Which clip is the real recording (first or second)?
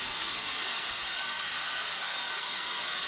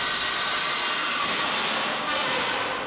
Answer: second